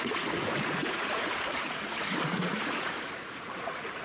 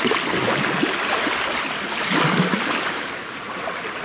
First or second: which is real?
second